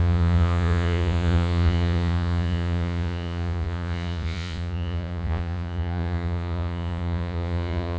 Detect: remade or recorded remade